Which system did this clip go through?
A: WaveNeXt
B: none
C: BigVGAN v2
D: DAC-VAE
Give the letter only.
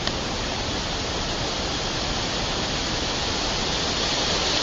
B